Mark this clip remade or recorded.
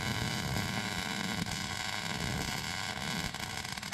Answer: recorded